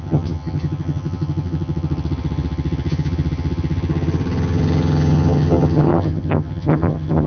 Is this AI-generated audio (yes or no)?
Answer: yes